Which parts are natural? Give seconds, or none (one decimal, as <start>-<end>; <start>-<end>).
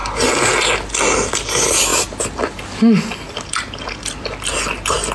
0.0-5.1